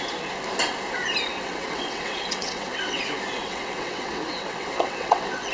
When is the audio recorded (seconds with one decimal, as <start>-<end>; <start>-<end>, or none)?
0.0-1.3; 3.0-3.4